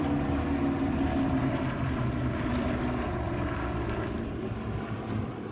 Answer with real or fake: fake